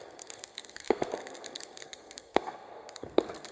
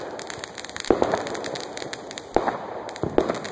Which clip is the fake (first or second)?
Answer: first